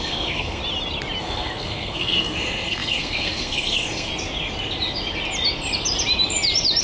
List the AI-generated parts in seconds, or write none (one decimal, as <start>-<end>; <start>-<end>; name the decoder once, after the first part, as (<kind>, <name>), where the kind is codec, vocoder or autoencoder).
0.0-0.6 (codec, SNAC); 1.2-4.1